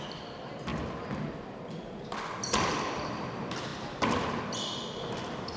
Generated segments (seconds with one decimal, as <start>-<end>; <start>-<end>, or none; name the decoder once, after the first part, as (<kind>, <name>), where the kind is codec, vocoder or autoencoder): none